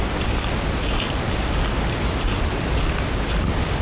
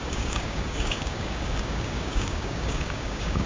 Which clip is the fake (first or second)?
second